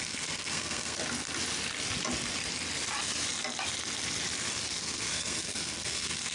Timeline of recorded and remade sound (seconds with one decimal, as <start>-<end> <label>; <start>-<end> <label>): 0.0-1.0 remade; 1.0-4.8 recorded; 4.8-6.3 remade